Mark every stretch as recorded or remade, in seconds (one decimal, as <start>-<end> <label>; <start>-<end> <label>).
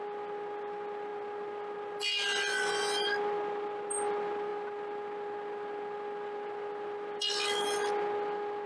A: 0.0-8.7 recorded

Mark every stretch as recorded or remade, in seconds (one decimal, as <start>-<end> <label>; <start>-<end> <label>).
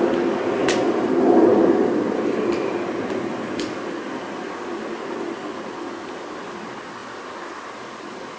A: 0.0-0.6 recorded; 0.6-1.1 remade; 1.1-8.4 recorded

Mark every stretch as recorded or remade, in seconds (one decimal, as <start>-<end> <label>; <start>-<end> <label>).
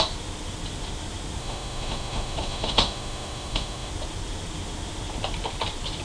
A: 0.0-1.4 recorded; 1.4-3.9 remade; 3.9-6.0 recorded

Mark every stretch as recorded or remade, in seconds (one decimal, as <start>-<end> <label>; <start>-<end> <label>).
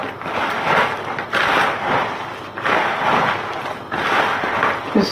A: 0.0-5.1 recorded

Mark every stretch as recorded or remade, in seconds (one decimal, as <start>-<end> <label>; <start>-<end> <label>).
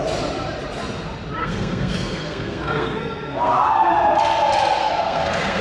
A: 0.0-1.4 recorded; 1.4-3.9 remade; 3.9-4.8 recorded; 4.8-5.6 remade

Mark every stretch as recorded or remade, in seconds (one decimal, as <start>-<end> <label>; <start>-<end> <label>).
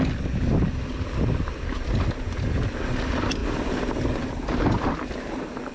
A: 0.0-5.7 recorded